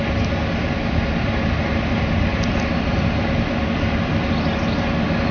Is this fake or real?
real